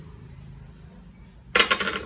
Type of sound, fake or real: real